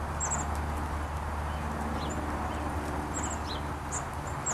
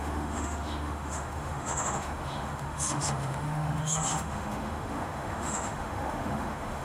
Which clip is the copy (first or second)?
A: second